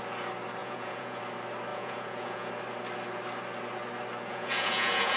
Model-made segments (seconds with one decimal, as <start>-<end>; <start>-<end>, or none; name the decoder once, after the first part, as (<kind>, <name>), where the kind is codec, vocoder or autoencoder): 0.6-1.2 (vocoder, Vocos); 1.7-2.5; 4.3-5.2